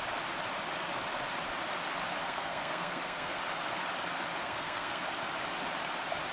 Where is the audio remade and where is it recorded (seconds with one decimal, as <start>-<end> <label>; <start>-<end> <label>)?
0.0-2.2 recorded; 2.2-3.4 remade; 3.4-4.4 recorded; 4.4-5.0 remade; 5.0-6.3 recorded